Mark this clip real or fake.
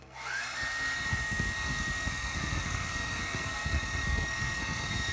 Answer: fake